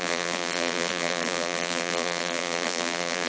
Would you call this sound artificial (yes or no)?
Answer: yes